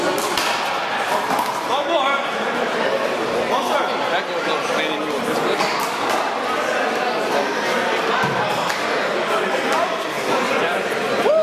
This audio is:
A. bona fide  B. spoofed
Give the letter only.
A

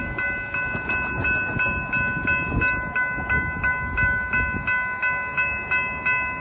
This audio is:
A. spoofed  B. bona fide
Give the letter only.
B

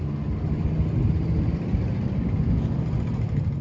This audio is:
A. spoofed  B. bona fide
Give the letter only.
B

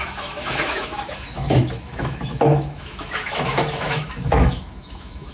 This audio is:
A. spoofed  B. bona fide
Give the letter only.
A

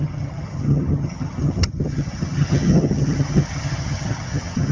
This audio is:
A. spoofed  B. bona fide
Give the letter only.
A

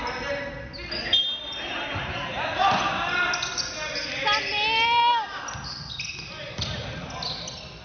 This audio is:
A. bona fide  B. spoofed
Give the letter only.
A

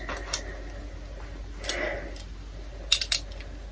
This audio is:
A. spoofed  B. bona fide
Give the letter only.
B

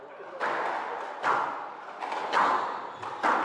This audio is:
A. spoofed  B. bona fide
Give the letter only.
B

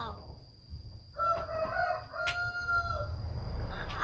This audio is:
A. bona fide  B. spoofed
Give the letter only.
A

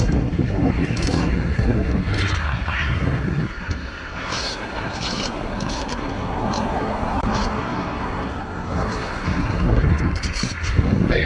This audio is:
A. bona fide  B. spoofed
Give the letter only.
B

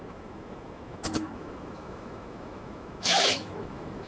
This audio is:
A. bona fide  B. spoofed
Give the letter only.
B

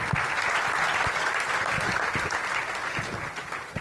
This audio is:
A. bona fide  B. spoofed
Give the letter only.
A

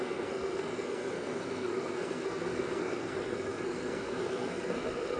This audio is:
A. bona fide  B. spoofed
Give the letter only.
B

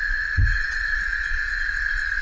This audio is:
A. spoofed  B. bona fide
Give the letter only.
A